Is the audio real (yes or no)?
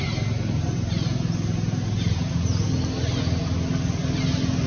yes